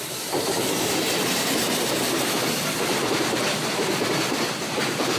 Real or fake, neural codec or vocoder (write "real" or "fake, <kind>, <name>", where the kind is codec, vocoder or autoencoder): fake, vocoder, BigVGAN v2